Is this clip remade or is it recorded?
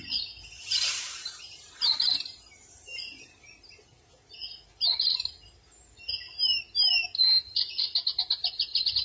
recorded